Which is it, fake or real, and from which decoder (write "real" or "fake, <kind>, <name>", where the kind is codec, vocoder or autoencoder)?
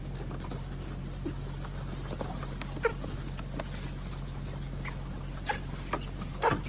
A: real